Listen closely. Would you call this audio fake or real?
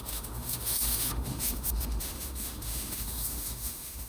fake